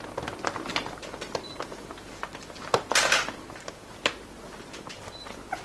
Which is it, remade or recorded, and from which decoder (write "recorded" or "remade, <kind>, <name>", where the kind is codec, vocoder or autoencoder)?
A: recorded